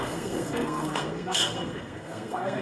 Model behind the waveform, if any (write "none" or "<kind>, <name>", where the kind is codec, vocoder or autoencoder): codec, SNAC